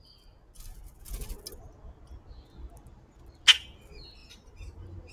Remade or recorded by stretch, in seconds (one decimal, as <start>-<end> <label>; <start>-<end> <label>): 0.0-2.6 recorded; 2.6-3.2 remade; 3.2-4.2 recorded; 4.2-5.1 remade